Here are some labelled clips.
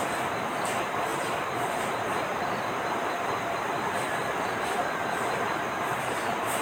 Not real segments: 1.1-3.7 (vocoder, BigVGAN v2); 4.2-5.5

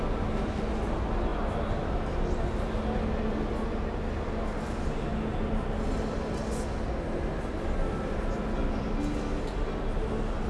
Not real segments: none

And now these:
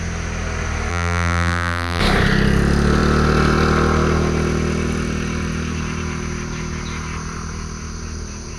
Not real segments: 0.9-2.0 (vocoder, BigVGAN v2)

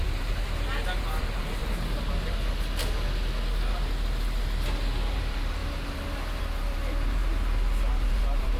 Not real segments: 0.0-1.6 (vocoder, BigVGAN v2); 5.1-5.6; 6.4-7.2; 7.9-8.6

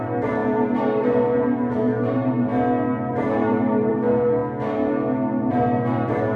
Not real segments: 0.0-2.5 (vocoder, BigVGAN v2); 3.1-4.4; 5.5-6.4

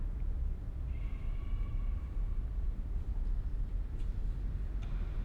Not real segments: 1.7-3.1 (vocoder, BigVGAN v2); 3.5-4.0